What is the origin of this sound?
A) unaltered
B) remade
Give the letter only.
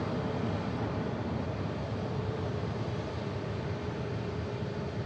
A